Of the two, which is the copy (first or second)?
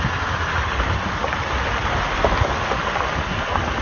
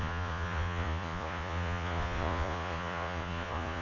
second